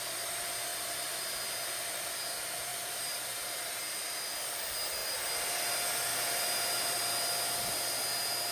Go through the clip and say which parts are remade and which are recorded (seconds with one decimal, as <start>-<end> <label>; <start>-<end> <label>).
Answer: 0.0-0.7 recorded; 0.7-2.2 remade; 2.2-2.7 recorded; 2.7-3.8 remade; 3.8-6.1 recorded; 6.1-7.0 remade; 7.0-8.5 recorded